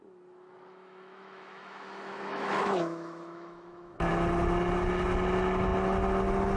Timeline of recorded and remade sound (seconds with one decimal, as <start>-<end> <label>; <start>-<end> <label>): 0.0-0.7 recorded; 0.7-4.1 remade; 4.1-6.6 recorded